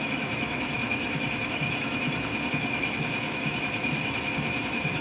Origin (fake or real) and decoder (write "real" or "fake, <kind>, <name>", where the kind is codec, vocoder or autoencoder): fake, autoencoder, DAC-VAE